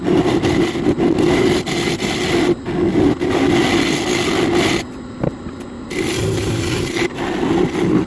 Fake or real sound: real